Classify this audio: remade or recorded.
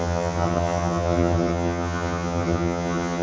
remade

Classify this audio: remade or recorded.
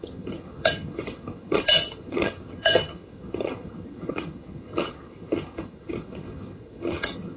remade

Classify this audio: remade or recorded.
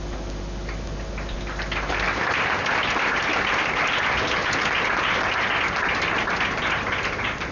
recorded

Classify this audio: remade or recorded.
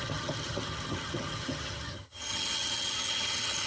remade